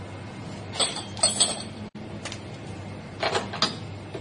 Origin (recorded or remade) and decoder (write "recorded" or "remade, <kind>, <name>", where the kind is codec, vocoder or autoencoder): recorded